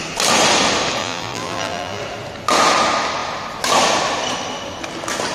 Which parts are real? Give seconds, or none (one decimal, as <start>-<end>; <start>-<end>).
0.0-1.0; 2.0-5.3